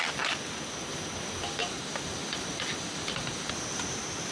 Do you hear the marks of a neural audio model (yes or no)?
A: no